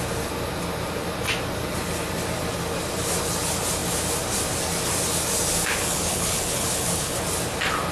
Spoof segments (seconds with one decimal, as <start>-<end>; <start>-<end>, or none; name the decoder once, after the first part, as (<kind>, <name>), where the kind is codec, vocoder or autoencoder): 5.8-7.2 (codec, HILCodec)